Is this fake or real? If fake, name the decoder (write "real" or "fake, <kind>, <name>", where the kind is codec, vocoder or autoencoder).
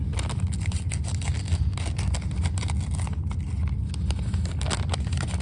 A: real